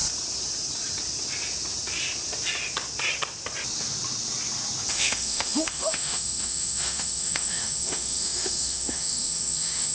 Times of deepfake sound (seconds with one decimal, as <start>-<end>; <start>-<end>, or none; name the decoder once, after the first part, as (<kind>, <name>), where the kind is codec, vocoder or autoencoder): 4.9-9.9 (autoencoder, DAC-VAE)